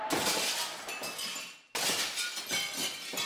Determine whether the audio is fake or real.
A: real